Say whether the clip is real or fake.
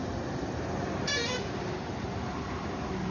fake